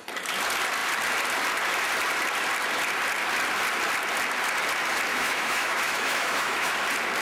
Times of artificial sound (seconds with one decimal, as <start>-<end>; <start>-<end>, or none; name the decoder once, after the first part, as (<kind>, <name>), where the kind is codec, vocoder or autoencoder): 5.1-6.7 (autoencoder, DAC-VAE)